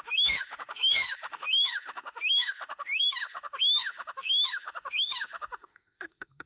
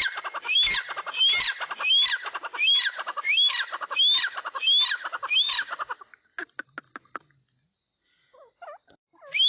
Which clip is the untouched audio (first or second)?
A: second